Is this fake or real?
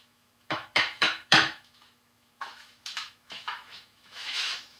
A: fake